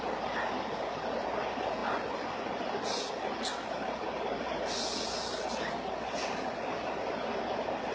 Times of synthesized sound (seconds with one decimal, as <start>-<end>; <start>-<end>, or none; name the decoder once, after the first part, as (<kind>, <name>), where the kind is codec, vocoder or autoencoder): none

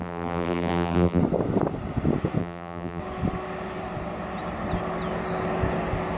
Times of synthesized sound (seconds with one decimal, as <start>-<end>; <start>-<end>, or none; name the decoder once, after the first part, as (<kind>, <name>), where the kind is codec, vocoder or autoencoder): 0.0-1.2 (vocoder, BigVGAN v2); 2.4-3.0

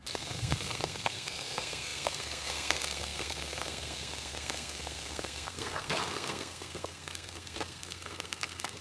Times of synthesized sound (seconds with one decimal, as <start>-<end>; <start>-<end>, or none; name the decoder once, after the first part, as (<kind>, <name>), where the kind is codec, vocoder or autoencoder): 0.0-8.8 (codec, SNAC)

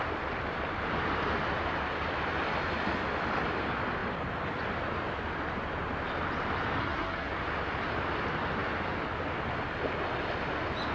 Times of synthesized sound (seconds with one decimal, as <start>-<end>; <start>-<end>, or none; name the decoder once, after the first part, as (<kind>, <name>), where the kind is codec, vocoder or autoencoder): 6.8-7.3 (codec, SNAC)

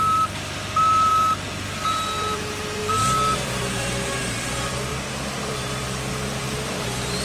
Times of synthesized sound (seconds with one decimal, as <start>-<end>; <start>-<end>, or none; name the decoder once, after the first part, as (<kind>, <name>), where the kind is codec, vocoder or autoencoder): 0.0-1.1 (vocoder, BigVGAN v2); 1.9-7.2

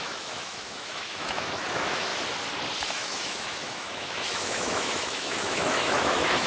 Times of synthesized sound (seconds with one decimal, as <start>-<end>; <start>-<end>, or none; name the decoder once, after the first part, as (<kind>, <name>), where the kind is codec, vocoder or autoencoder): 0.0-2.1 (autoencoder, DAC-VAE); 2.8-6.5

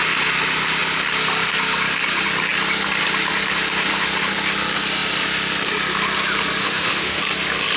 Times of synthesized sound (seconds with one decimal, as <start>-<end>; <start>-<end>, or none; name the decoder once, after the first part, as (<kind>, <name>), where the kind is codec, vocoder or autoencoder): 6.6-7.2 (autoencoder, DAC-VAE)

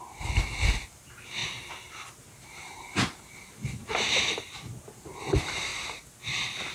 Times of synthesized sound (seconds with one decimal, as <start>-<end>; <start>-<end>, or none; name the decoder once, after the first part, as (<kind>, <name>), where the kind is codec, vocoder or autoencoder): 0.0-5.7 (vocoder, BigVGAN v2); 6.2-6.7